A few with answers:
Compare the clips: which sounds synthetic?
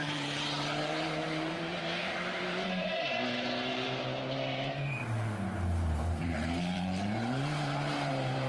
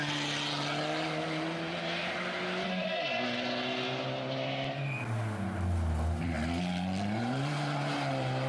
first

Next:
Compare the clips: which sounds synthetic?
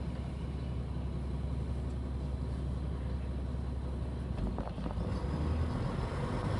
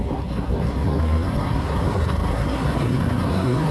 second